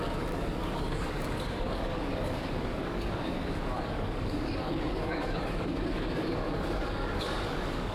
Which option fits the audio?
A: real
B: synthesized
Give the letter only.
B